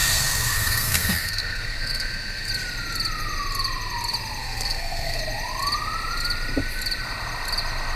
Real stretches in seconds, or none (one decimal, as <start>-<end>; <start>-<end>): 2.5-4.4; 5.2-8.0